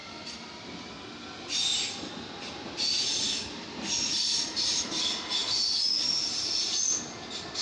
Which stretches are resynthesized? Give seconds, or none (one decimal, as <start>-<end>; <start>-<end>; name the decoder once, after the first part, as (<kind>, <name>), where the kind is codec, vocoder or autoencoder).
0.0-0.7 (vocoder, BigVGAN v2)